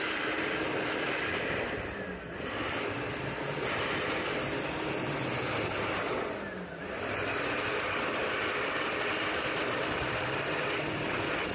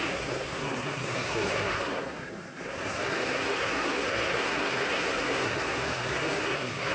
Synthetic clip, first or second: second